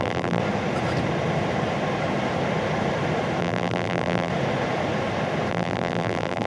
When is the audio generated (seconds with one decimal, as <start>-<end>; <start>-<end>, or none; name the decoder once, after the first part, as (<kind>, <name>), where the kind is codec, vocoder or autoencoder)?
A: 0.0-0.4 (vocoder, BigVGAN v2); 3.4-4.3; 5.5-6.5